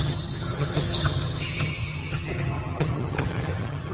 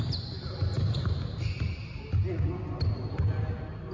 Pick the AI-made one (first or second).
first